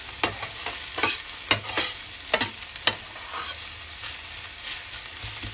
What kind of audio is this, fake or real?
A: real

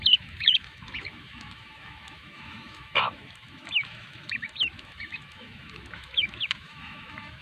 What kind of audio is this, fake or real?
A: fake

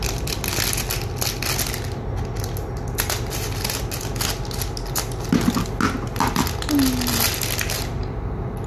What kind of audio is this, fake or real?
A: real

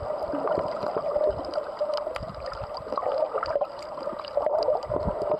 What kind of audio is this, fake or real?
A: real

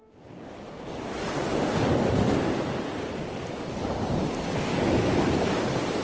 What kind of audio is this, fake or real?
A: real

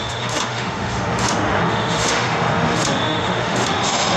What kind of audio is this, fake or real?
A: fake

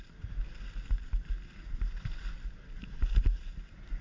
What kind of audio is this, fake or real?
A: real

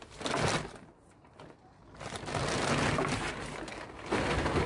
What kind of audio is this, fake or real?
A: real